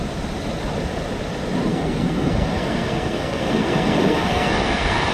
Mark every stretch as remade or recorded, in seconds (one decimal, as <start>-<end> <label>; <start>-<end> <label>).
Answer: 0.0-1.7 recorded; 1.7-5.1 remade